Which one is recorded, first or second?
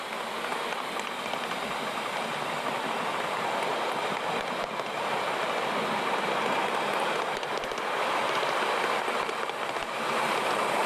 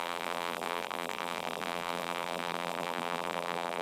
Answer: first